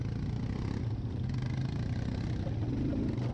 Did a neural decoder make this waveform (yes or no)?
no